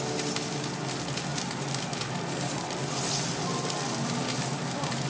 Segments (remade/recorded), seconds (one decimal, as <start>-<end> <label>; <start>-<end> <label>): 0.0-5.1 recorded